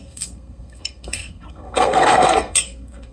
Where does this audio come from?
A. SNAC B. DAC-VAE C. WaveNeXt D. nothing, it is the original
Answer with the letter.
A